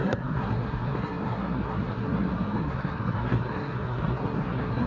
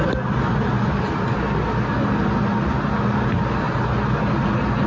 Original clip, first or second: second